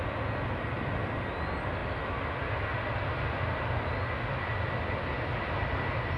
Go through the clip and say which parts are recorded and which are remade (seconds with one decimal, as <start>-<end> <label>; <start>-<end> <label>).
0.0-6.2 recorded